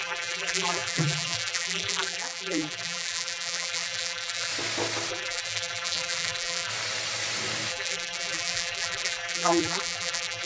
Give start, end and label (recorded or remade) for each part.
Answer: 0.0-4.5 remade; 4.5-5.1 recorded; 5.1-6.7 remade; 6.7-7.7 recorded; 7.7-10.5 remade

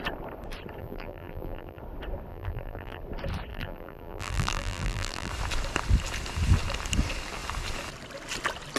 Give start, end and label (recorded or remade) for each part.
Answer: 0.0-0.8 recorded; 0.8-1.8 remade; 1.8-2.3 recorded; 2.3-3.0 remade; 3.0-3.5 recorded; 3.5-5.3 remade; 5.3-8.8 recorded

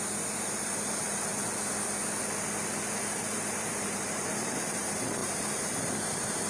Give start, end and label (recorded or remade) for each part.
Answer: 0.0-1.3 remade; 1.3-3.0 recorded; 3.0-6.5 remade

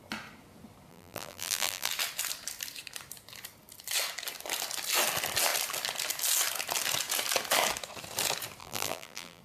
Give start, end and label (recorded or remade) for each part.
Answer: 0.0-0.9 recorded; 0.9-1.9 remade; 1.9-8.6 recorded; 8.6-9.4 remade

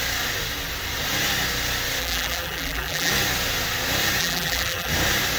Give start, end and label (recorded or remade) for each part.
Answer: 0.0-2.0 recorded; 2.0-3.1 remade; 3.1-4.2 recorded; 4.2-4.9 remade; 4.9-5.4 recorded